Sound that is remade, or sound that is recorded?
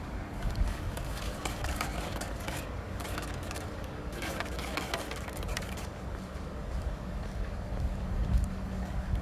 remade